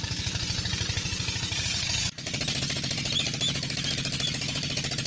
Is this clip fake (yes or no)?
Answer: yes